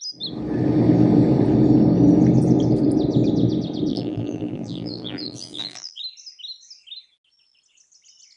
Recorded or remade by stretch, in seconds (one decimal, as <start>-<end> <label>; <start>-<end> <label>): 0.0-3.9 recorded; 3.9-6.0 remade; 6.0-8.4 recorded